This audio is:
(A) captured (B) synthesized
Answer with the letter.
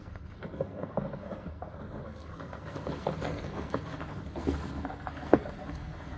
B